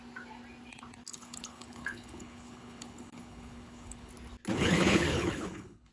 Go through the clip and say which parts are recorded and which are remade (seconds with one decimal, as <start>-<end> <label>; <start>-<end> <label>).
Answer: 0.0-1.1 recorded; 1.1-4.1 remade; 4.1-4.5 recorded; 4.5-5.9 remade